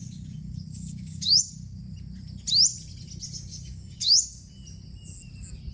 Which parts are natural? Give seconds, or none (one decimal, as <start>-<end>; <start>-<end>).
1.8-3.5; 4.5-5.7